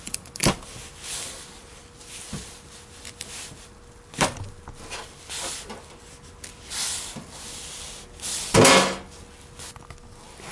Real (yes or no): yes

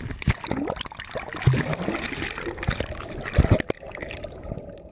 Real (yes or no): yes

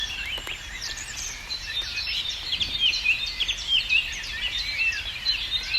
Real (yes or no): no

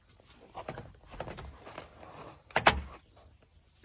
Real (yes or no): yes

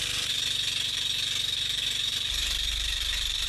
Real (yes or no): no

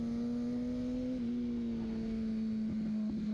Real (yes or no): yes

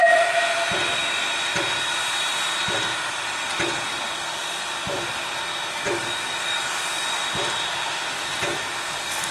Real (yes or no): no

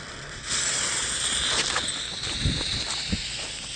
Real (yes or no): no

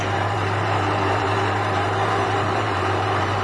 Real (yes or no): no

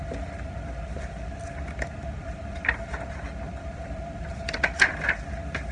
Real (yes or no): no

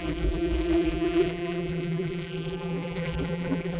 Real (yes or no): no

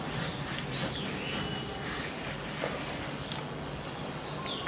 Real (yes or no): yes